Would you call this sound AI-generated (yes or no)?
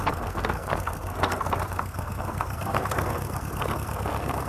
yes